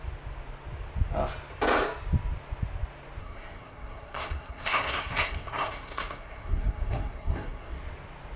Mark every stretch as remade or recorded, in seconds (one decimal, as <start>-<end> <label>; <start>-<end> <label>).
0.0-3.2 recorded; 3.2-7.8 remade; 7.8-8.4 recorded